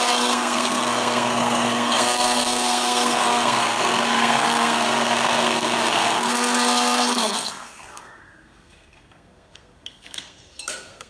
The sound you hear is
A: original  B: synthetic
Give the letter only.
B